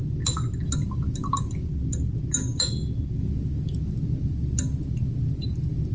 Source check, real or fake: real